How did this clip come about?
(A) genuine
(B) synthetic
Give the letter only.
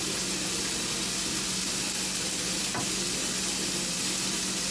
A